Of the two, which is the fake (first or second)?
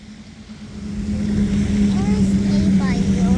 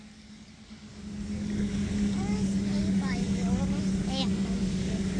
second